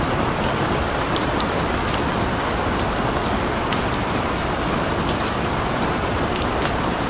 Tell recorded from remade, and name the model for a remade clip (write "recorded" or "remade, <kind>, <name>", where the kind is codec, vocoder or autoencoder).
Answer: recorded